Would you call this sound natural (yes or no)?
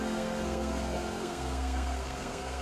no